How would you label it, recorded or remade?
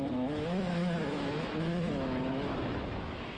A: remade